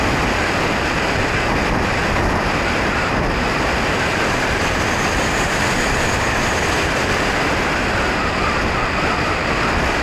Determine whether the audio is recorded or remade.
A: recorded